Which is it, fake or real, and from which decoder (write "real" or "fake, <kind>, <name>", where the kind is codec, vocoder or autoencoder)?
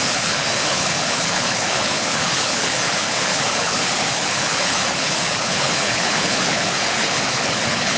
fake, codec, HILCodec